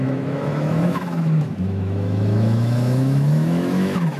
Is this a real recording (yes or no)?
no